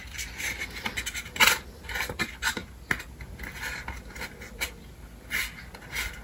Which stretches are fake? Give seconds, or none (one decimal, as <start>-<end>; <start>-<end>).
none